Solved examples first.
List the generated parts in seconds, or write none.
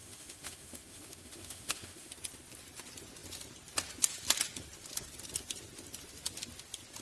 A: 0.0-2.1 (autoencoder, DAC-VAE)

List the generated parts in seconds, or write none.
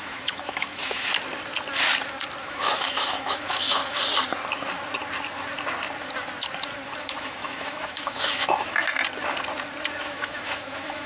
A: 0.0-1.1 (autoencoder, DAC-VAE); 2.4-3.8; 7.0-8.8; 10.0-11.1